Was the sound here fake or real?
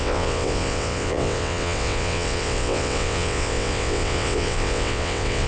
fake